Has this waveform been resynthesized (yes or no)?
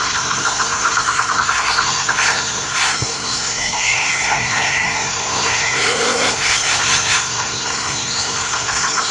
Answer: yes